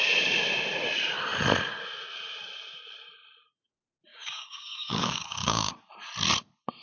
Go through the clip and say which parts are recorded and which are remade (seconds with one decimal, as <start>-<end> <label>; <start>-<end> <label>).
0.0-4.1 recorded; 4.1-5.7 remade; 5.7-6.8 recorded